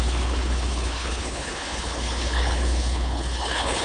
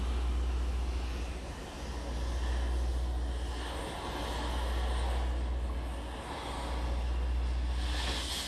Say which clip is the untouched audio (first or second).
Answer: second